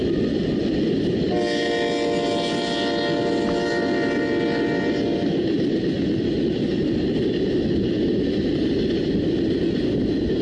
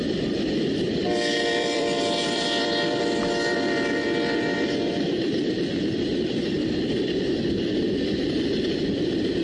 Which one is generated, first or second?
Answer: second